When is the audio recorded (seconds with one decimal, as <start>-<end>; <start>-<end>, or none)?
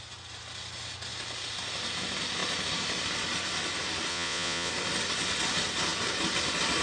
0.0-4.1; 4.7-6.8